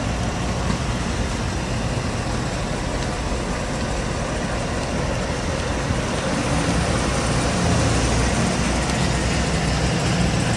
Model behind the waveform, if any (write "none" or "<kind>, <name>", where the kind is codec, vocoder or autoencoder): none